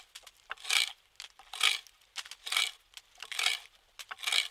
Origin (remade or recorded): recorded